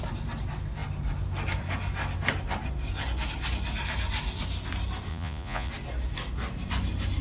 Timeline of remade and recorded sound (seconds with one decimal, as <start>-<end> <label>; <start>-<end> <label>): 0.0-5.1 recorded; 5.1-5.7 remade; 5.7-7.2 recorded